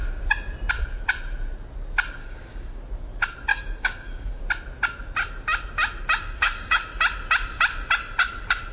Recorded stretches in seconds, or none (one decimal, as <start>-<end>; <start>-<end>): 0.0-2.2; 2.8-3.5; 4.4-6.2; 6.8-8.7